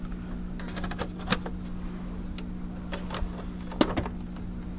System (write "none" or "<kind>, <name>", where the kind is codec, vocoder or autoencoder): none